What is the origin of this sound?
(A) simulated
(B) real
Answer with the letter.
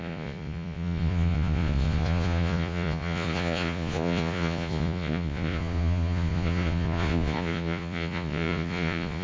A